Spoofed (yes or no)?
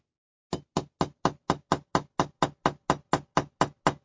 no